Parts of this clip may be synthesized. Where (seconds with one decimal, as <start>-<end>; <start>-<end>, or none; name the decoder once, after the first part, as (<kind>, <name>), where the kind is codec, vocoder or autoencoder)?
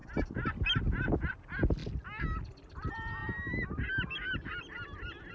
none